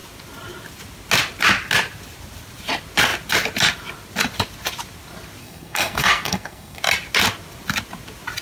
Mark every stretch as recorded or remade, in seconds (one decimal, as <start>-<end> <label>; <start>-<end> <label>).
0.0-5.4 recorded; 5.4-6.8 remade; 6.8-8.4 recorded